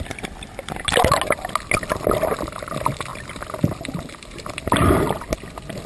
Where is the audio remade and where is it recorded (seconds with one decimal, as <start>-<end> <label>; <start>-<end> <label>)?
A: 0.0-5.9 recorded